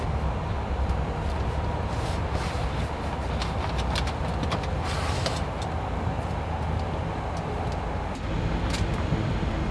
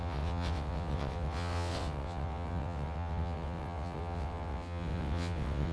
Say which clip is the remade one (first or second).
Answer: second